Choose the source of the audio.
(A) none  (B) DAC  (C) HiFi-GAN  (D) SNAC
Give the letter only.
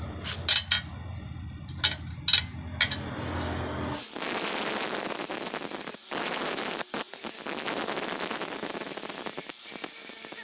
A